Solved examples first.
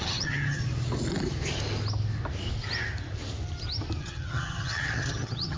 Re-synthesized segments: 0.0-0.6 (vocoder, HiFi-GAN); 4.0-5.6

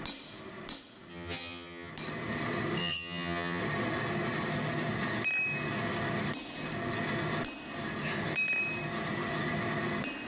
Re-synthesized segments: 1.1-1.9 (vocoder, HiFi-GAN); 2.8-3.6

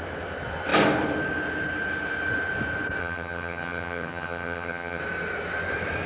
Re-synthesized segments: 3.0-5.0 (vocoder, HiFi-GAN)